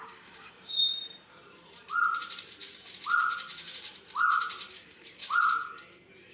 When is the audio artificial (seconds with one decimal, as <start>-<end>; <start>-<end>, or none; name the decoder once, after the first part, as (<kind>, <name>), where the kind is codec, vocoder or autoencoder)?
0.0-0.9 (codec, DAC); 4.7-5.2